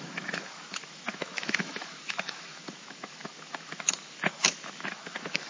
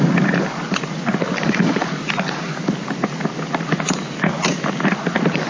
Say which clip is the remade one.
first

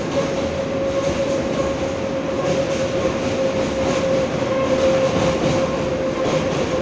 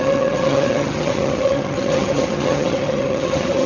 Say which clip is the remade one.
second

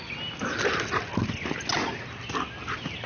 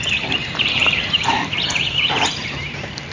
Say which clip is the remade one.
second